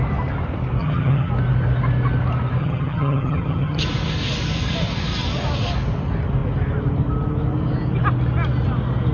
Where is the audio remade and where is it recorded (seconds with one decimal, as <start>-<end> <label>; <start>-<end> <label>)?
0.0-0.8 recorded; 0.8-1.3 remade; 1.3-2.6 recorded; 2.6-3.8 remade; 3.8-9.1 recorded